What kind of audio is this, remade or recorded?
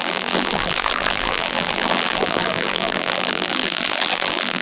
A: remade